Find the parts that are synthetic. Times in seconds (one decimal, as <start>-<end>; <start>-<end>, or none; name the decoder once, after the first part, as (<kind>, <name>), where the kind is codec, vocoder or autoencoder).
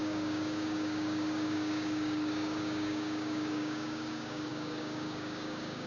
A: 0.0-5.9 (codec, DAC)